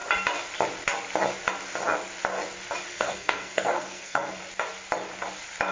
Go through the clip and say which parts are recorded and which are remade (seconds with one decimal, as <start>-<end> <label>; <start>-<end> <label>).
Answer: 0.0-2.9 recorded; 2.9-4.4 remade; 4.4-5.7 recorded